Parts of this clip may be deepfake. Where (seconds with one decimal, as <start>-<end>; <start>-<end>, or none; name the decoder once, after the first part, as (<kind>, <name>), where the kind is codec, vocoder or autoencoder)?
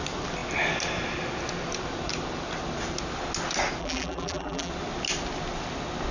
3.8-4.7 (vocoder, BigVGAN v2)